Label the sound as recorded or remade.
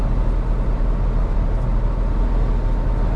recorded